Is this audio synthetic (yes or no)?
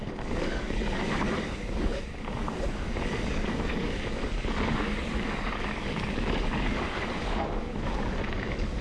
yes